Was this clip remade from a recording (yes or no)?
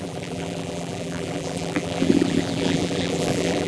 yes